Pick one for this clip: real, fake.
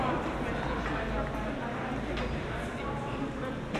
real